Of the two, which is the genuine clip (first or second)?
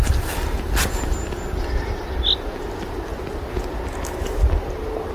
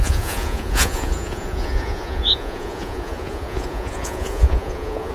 first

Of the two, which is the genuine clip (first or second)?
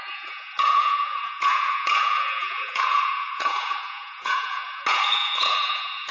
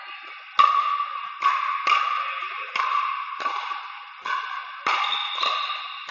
second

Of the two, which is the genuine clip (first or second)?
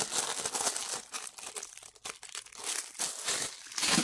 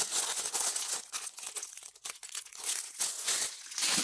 first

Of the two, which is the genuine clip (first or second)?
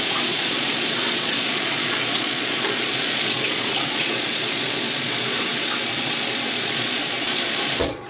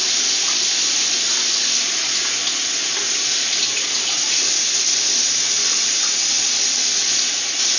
second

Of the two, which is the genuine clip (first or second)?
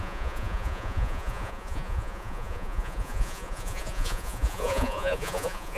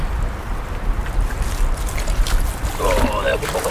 second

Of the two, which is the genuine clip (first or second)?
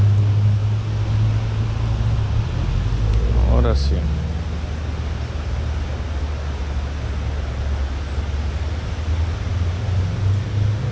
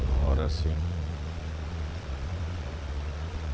first